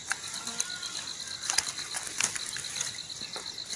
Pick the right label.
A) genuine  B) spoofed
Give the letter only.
A